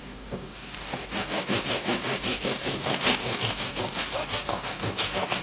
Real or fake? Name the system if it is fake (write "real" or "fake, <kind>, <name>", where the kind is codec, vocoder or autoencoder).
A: fake, codec, DAC